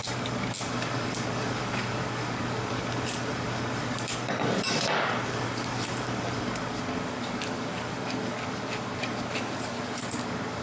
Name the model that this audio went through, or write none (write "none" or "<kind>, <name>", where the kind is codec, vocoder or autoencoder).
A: codec, DAC